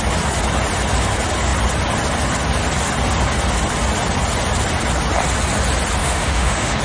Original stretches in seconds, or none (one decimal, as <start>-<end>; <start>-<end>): 0.0-6.0